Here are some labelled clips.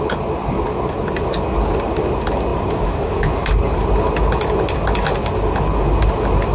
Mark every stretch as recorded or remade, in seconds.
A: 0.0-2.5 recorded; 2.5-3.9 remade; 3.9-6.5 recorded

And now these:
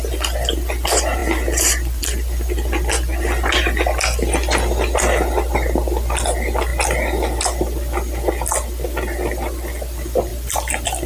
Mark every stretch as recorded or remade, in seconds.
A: 0.0-10.3 recorded; 10.3-11.1 remade

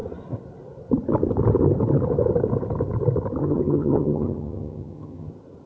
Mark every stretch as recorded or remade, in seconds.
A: 0.0-3.4 recorded; 3.4-5.3 remade; 5.3-5.7 recorded

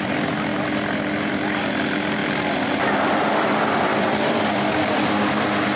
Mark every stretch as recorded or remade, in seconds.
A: 0.0-0.5 remade; 0.5-1.3 recorded; 1.3-5.8 remade

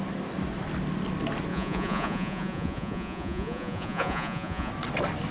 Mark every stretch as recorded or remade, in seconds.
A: 0.0-1.5 recorded; 1.5-4.7 remade; 4.7-5.3 recorded

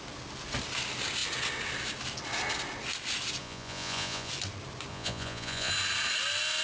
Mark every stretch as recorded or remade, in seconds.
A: 0.0-3.4 recorded; 3.4-4.3 remade; 4.3-4.9 recorded; 4.9-5.7 remade; 5.7-6.6 recorded

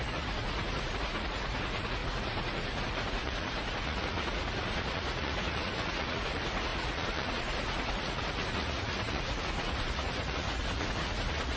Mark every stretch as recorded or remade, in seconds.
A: 0.0-11.6 remade

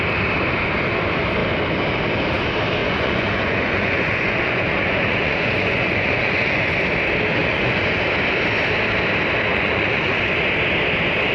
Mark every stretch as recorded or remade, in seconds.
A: 0.0-2.8 recorded; 2.8-6.6 remade; 6.6-7.4 recorded; 7.4-7.9 remade; 7.9-9.5 recorded; 9.5-10.2 remade; 10.2-11.3 recorded